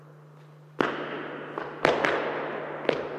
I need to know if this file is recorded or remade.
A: recorded